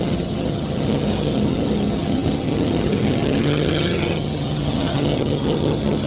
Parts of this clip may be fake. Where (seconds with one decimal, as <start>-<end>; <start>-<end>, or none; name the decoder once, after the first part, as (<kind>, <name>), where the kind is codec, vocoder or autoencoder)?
0.0-6.1 (vocoder, HiFi-GAN)